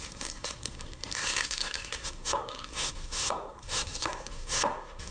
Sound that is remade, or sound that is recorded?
remade